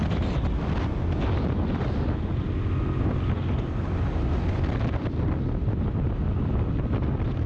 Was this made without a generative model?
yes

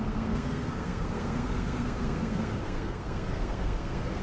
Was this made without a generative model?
no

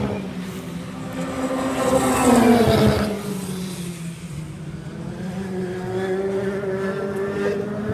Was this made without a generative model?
yes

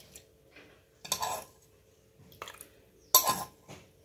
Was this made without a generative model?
yes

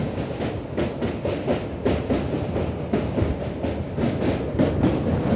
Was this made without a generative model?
yes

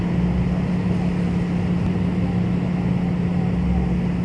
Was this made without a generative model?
yes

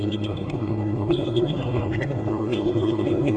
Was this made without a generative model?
no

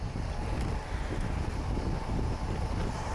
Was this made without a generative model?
yes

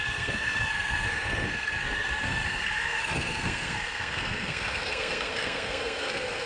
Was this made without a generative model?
no